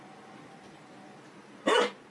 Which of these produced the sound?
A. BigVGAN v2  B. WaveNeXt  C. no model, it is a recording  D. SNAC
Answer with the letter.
A